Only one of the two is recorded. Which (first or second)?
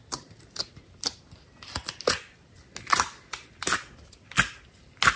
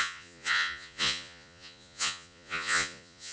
first